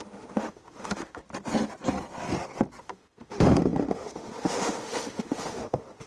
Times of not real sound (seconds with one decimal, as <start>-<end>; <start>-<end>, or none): 0.0-1.2; 2.8-6.1